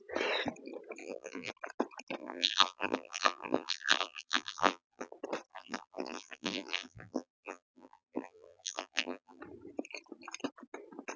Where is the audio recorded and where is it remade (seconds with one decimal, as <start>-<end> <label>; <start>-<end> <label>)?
0.0-1.0 recorded; 1.0-1.5 remade; 1.5-2.2 recorded; 2.2-5.1 remade; 5.1-5.5 recorded; 5.5-9.4 remade; 9.4-11.2 recorded